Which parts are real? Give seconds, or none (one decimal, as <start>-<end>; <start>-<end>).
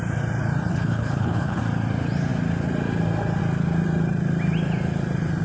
0.0-0.7; 1.6-5.4